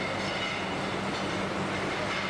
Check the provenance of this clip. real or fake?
real